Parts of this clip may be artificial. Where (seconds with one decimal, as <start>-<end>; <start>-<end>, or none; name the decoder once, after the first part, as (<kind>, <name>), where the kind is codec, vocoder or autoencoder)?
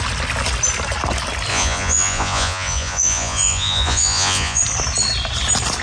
1.5-4.6 (vocoder, Vocos)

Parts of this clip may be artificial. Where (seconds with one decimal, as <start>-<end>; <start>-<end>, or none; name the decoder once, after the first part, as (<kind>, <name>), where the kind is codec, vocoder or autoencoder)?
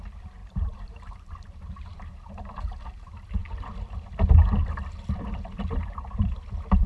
0.4-2.6 (vocoder, BigVGAN v2)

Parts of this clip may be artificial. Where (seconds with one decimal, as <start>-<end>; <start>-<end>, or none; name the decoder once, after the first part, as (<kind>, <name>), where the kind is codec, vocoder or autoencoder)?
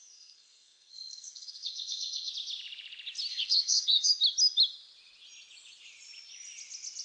0.0-2.3 (codec, SNAC); 3.3-4.1